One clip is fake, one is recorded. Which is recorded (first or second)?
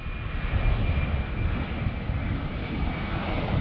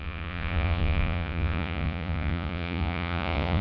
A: first